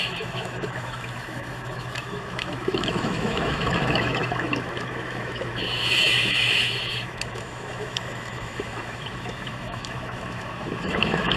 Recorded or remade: remade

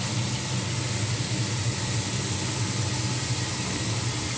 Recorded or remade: recorded